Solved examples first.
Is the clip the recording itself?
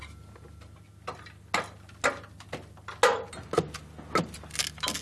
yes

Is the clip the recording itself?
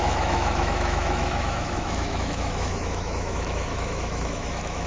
no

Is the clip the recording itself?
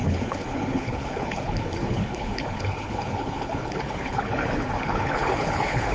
no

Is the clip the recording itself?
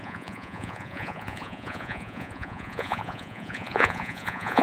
no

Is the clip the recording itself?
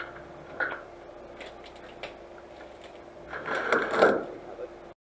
yes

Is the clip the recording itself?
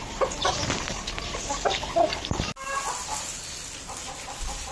yes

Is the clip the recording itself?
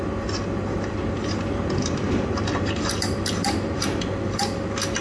yes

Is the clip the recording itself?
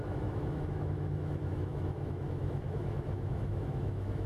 no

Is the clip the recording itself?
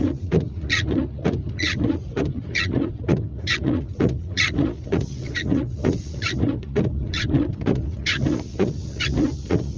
no